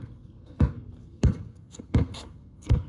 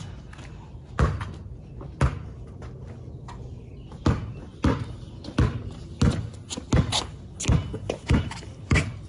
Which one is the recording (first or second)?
second